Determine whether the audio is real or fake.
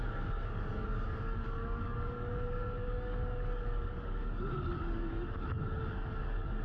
fake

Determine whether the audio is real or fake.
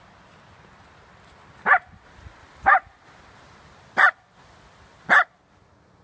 real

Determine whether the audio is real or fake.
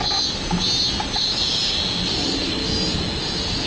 real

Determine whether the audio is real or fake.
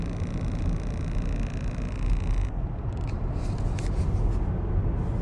real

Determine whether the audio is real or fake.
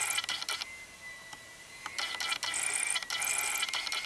real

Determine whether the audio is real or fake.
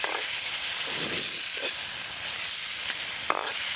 real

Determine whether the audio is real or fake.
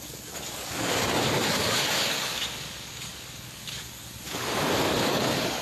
fake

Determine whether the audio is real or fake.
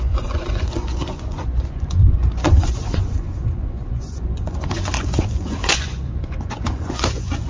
fake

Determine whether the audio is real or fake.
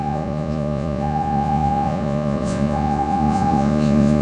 fake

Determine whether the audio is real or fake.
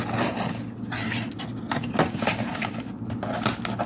real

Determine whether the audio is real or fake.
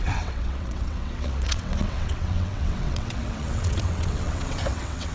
fake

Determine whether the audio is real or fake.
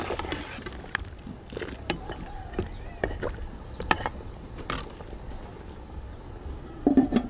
real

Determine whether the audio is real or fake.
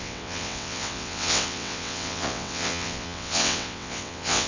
fake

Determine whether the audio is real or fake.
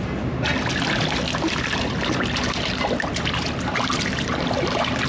real